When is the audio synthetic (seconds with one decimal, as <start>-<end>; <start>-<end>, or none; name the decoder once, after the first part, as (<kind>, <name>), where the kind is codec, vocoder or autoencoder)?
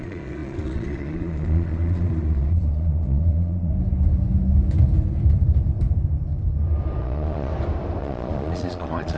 0.0-3.7 (vocoder, Vocos); 7.0-7.5; 8.0-9.2